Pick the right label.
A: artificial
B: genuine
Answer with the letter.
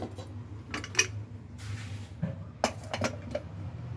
B